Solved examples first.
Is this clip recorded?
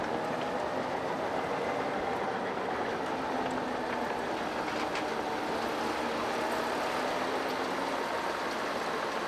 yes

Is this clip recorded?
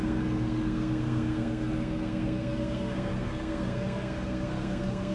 no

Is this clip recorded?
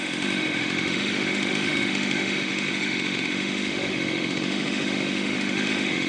no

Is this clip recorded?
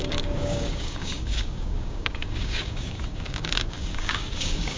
no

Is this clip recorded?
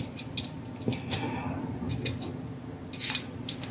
yes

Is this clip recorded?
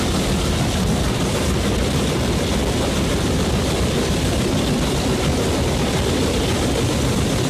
no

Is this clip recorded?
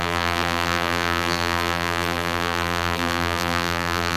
no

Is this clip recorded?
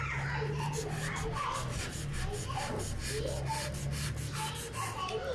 yes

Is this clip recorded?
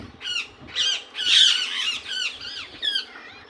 yes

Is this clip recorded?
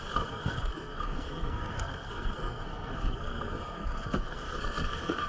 no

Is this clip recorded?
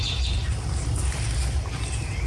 yes